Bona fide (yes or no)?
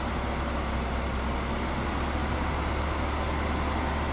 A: yes